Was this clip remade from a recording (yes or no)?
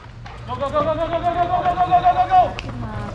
no